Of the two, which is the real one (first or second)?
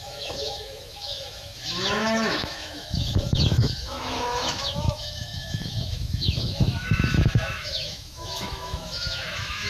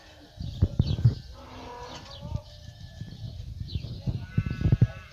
second